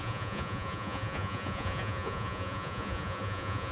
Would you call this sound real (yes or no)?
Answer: no